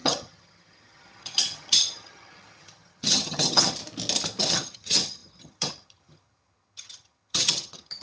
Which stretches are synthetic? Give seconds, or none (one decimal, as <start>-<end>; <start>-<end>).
0.0-3.8; 4.4-8.0